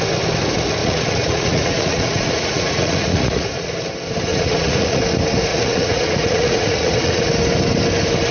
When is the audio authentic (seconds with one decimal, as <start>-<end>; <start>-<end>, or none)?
0.0-0.8; 3.7-4.3; 5.0-5.5; 7.3-8.3